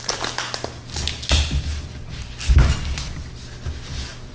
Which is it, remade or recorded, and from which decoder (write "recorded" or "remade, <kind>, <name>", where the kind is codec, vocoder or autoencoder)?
recorded